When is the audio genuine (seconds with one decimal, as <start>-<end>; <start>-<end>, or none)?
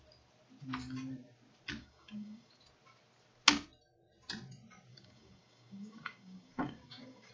0.0-1.8; 2.5-4.9